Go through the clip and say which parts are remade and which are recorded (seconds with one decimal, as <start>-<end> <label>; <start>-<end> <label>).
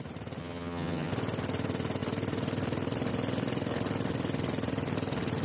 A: 0.0-0.4 recorded; 0.4-1.1 remade; 1.1-5.4 recorded